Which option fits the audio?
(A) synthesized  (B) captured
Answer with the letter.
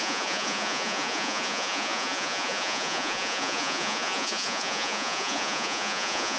A